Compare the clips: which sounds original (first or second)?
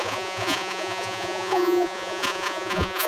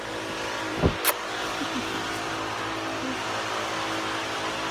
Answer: second